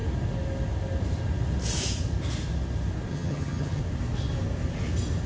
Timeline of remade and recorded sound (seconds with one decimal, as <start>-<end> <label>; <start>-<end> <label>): 0.0-3.1 recorded; 3.1-3.8 remade; 3.8-5.3 recorded